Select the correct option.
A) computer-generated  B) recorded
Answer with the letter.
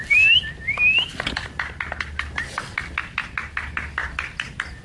B